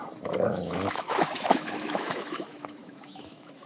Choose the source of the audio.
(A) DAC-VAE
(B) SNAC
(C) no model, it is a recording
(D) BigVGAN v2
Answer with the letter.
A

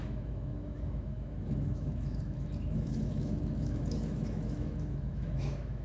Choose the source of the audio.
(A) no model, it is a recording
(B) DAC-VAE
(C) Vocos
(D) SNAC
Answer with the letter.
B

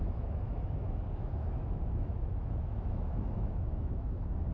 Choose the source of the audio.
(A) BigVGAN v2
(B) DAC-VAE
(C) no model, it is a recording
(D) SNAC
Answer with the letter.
B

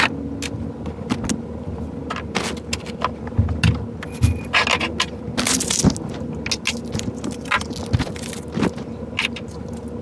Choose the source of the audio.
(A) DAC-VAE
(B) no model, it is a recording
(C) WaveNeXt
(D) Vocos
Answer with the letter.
B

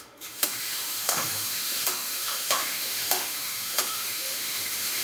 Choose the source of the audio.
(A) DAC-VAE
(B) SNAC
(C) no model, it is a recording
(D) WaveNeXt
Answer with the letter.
A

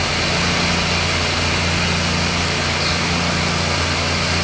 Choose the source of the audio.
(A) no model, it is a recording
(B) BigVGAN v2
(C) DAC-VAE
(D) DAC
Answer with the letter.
A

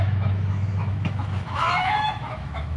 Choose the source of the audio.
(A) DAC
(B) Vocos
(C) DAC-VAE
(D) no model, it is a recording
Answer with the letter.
C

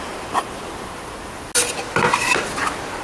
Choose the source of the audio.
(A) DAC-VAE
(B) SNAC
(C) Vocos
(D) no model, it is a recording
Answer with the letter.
D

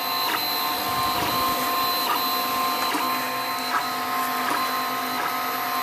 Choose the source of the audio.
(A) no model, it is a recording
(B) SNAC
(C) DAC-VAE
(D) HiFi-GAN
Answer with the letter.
A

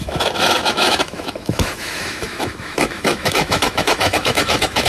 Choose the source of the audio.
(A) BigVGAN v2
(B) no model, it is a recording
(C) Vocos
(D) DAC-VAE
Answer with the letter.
D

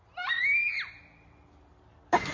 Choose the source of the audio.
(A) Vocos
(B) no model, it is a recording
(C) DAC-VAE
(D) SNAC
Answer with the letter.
B